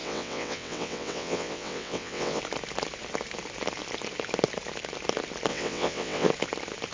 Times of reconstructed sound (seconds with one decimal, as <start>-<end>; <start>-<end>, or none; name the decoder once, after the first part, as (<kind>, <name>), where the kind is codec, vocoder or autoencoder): 0.0-2.4 (vocoder, WaveNeXt); 5.5-6.3